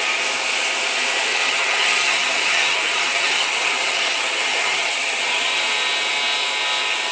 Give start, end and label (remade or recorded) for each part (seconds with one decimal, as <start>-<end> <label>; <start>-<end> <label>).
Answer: 0.0-1.3 recorded; 1.3-5.6 remade; 5.6-7.1 recorded